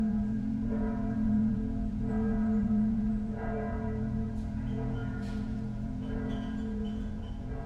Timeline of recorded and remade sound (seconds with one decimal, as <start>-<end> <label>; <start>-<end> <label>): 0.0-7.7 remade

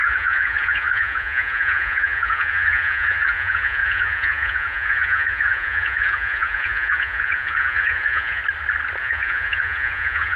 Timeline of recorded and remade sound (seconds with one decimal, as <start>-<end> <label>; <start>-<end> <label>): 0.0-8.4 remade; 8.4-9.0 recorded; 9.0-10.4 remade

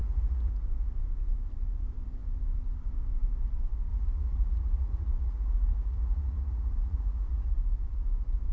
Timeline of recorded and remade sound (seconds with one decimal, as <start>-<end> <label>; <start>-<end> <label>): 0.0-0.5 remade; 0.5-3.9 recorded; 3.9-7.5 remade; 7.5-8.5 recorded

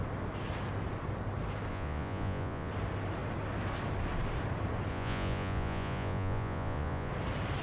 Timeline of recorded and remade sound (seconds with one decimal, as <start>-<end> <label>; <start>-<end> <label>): 0.0-1.7 recorded; 1.7-2.7 remade; 2.7-4.9 recorded; 4.9-7.1 remade; 7.1-7.6 recorded

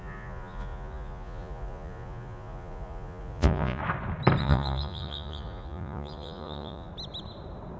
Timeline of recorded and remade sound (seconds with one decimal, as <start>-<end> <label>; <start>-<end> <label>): 0.0-3.8 remade; 3.8-4.4 recorded; 4.4-6.9 remade; 6.9-7.8 recorded

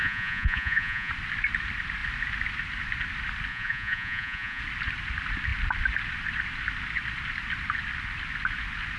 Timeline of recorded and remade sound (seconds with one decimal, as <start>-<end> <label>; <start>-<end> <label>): 0.0-1.1 remade; 1.1-3.5 recorded; 3.5-4.6 remade; 4.6-9.0 recorded